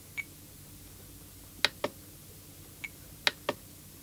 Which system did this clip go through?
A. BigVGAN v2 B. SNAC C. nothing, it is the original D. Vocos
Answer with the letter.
C